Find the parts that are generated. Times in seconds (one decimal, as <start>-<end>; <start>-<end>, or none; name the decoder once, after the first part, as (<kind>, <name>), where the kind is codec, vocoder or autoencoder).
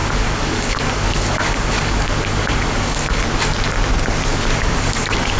0.0-3.2 (codec, DAC); 4.3-5.4